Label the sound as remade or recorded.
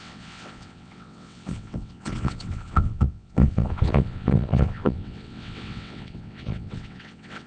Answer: remade